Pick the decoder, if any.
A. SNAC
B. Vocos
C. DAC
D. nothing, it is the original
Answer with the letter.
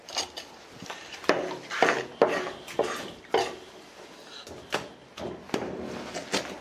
D